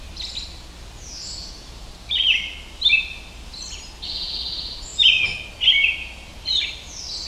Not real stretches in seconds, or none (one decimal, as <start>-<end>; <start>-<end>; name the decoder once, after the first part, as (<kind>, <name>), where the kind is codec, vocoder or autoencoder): 1.4-1.9 (vocoder, BigVGAN v2)

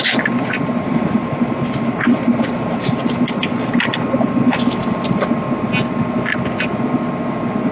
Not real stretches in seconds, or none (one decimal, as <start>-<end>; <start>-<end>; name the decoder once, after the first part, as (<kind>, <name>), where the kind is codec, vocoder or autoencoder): 1.2-3.4 (vocoder, BigVGAN v2)